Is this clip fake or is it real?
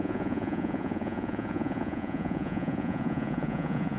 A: fake